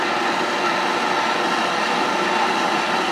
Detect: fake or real real